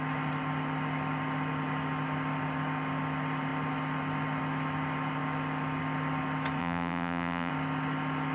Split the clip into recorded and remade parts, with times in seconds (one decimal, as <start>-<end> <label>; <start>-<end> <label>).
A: 0.0-6.6 recorded; 6.6-7.5 remade; 7.5-8.3 recorded